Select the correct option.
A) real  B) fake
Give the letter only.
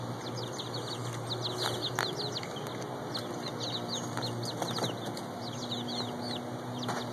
A